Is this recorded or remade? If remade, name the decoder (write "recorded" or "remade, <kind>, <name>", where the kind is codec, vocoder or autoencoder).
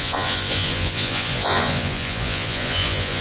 remade, vocoder, Vocos